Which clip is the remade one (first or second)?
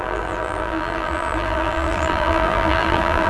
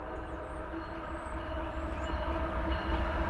first